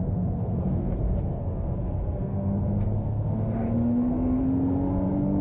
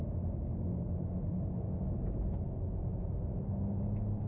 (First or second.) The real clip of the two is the second